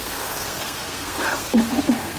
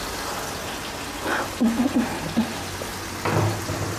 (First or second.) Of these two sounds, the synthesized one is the first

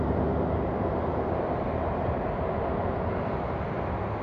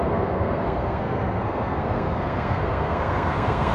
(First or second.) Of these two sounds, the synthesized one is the second